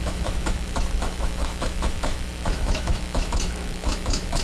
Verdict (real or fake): fake